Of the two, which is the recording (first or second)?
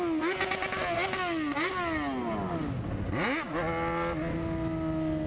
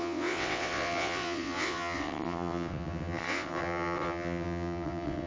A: first